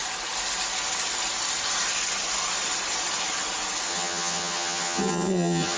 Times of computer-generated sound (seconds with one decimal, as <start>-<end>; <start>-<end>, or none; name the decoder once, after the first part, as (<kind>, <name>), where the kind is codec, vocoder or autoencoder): 3.9-5.8 (vocoder, HiFi-GAN)